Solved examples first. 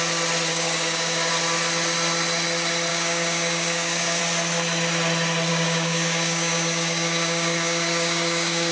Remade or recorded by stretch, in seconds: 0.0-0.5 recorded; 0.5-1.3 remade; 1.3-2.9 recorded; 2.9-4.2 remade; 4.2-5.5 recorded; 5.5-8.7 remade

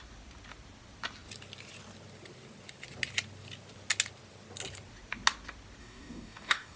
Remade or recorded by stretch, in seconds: 0.0-5.8 recorded; 5.8-6.8 remade

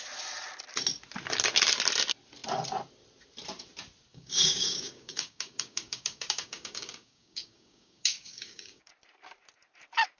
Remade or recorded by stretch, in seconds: 0.0-4.1 recorded; 4.1-8.9 remade; 8.9-10.2 recorded

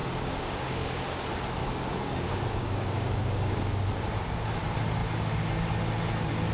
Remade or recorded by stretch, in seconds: 0.0-1.0 remade; 1.0-1.6 recorded; 1.6-3.9 remade; 3.9-6.5 recorded

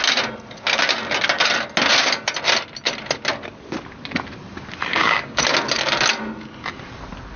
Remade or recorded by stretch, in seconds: 0.0-4.9 recorded; 4.9-5.4 remade; 5.4-7.4 recorded